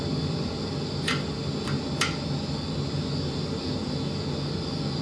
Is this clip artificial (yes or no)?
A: no